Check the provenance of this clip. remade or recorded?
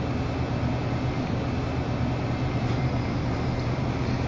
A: recorded